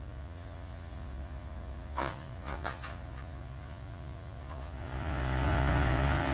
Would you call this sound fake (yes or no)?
yes